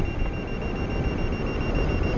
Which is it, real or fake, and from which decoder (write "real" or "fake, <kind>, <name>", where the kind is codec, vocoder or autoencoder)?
real